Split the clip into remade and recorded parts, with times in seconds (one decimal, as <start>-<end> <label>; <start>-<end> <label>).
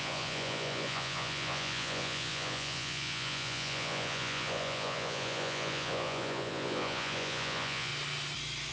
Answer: 0.0-7.9 remade; 7.9-8.7 recorded